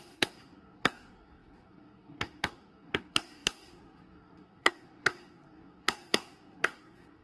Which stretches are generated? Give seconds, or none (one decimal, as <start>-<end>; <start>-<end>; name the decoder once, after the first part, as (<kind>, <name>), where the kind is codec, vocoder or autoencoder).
0.0-7.2 (codec, SNAC)